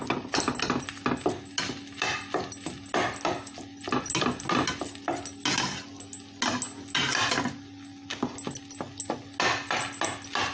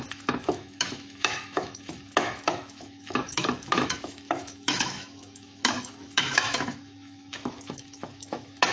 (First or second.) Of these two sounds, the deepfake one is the second